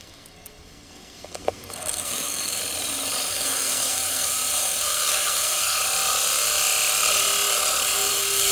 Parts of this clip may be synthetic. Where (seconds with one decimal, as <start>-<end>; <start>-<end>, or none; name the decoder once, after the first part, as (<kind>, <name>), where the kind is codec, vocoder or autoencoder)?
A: 0.0-2.6 (codec, SNAC); 3.3-5.8; 8.1-8.5